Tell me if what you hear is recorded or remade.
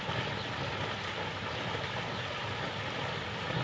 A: recorded